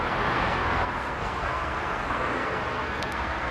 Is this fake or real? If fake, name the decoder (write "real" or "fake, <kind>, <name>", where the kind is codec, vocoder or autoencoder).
fake, codec, SNAC